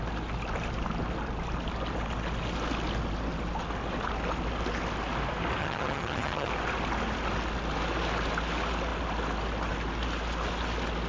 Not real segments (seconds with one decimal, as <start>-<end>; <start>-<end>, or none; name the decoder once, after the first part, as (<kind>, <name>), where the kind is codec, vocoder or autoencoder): 5.6-6.5 (vocoder, HiFi-GAN)